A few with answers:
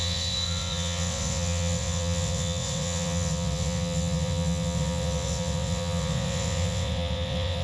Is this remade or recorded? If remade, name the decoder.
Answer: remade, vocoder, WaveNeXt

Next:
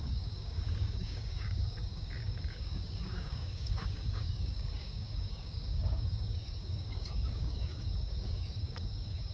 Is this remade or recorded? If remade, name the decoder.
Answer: remade, codec, DAC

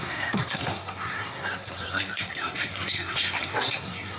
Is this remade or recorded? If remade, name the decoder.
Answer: remade, codec, SNAC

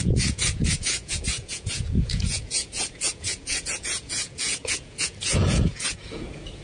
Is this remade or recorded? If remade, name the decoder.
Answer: remade, vocoder, Vocos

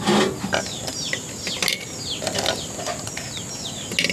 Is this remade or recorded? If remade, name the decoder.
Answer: recorded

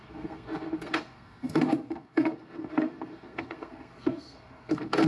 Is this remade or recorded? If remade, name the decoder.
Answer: remade, codec, SNAC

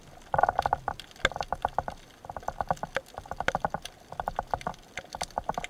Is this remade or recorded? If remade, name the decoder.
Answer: recorded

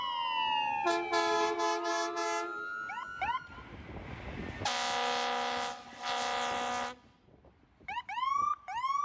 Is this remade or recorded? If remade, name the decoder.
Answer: recorded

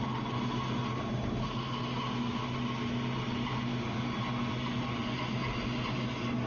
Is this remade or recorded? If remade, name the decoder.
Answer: recorded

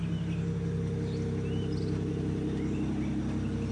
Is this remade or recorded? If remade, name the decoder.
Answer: recorded